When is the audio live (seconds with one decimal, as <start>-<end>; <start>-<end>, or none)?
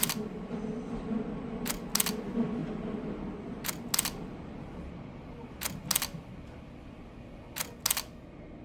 0.0-8.6